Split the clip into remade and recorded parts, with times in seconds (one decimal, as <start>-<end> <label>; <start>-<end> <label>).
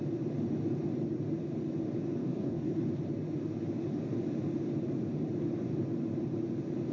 0.0-2.2 recorded; 2.2-2.8 remade; 2.8-6.9 recorded